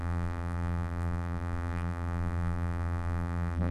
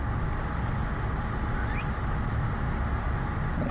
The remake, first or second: first